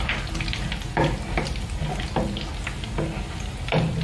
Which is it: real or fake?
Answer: real